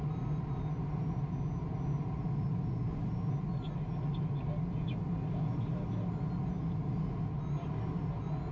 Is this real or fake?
real